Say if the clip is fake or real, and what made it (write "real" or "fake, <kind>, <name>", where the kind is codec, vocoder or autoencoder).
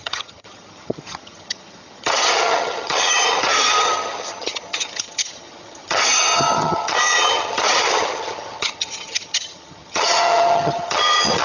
fake, vocoder, HiFi-GAN